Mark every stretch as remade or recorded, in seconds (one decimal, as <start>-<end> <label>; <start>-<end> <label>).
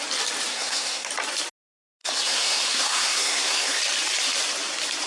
0.0-0.5 recorded; 0.5-1.1 remade; 1.1-2.0 recorded; 2.0-3.8 remade; 3.8-5.1 recorded